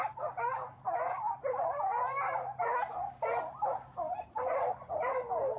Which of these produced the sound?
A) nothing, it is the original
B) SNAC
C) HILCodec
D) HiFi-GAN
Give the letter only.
A